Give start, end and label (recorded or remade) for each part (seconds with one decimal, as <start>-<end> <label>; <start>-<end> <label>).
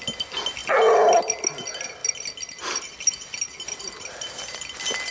0.0-5.1 recorded